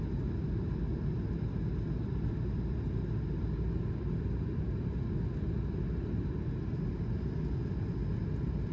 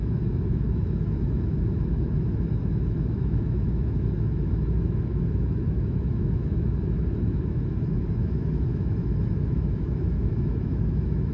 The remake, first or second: second